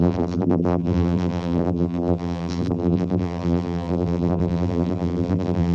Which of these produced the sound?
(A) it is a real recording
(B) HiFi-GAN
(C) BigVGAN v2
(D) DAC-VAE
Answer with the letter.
C